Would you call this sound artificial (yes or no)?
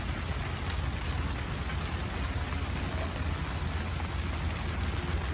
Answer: no